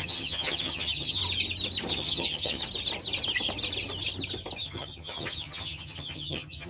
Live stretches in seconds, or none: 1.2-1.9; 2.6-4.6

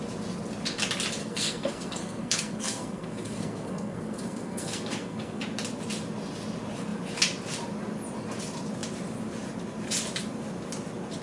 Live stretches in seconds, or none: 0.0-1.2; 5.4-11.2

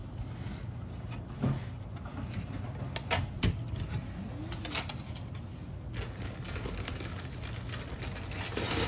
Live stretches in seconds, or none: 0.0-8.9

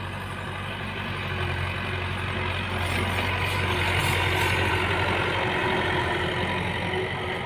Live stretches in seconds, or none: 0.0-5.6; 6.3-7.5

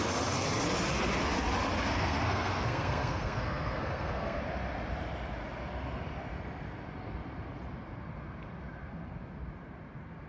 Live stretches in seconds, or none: 0.0-1.9; 4.4-10.3

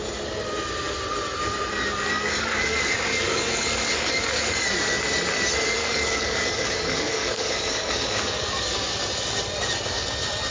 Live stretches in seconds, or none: 0.0-1.9; 5.0-5.8; 9.0-10.5